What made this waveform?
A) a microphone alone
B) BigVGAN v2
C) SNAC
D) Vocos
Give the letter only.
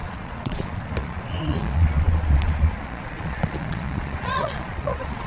D